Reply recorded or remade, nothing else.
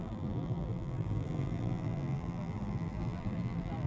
remade